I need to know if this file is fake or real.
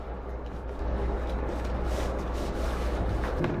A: fake